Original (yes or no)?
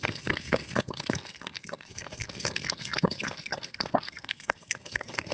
no